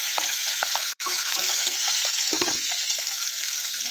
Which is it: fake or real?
fake